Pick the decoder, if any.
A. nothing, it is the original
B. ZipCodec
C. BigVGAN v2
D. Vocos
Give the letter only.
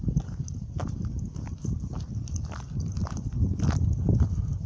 A